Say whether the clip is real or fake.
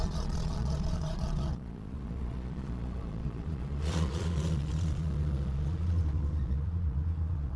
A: fake